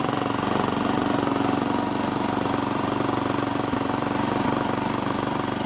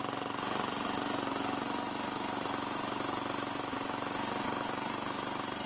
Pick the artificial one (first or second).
first